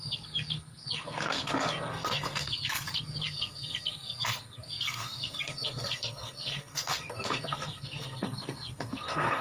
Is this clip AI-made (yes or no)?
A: yes